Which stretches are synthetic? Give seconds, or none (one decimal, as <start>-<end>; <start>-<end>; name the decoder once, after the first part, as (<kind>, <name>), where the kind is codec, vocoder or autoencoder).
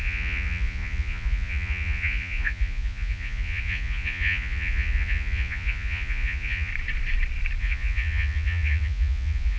0.0-6.7 (vocoder, Vocos); 7.6-9.6